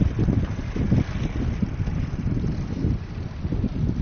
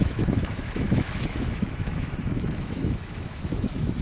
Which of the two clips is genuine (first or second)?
first